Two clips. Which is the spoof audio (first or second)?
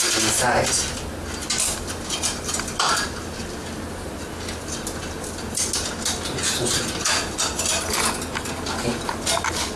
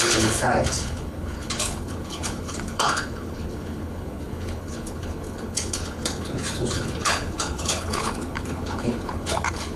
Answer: second